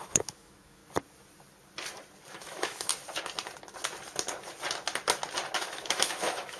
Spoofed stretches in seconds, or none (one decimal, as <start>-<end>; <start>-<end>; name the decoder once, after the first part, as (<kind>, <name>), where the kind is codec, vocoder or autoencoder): 0.0-0.8 (autoencoder, DAC-VAE); 2.3-2.9; 5.6-6.6